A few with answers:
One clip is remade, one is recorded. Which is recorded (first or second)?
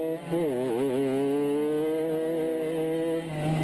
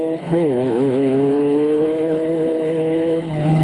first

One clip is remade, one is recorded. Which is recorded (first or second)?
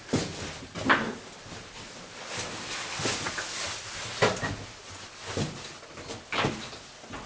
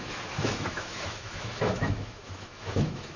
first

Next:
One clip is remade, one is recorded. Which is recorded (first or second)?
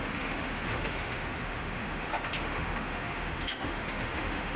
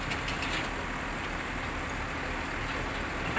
second